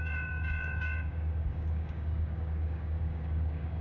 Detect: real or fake fake